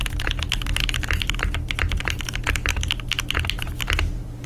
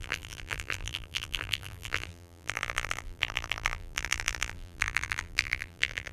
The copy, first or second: second